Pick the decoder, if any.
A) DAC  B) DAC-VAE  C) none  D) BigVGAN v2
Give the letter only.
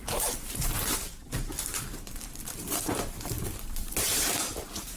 D